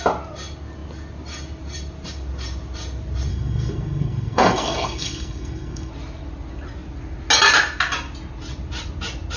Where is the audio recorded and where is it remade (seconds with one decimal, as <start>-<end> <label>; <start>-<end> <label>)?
0.0-3.3 recorded; 3.3-5.9 remade; 5.9-9.4 recorded